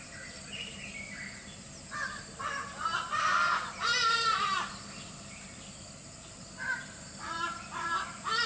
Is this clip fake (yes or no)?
no